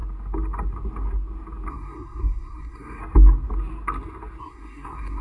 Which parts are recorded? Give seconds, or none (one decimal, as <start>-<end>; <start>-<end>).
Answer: 0.0-1.7; 3.0-4.4